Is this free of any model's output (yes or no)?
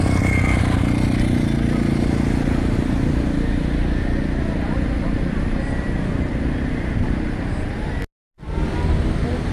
yes